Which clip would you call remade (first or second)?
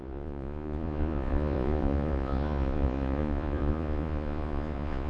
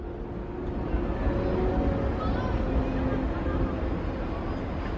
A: first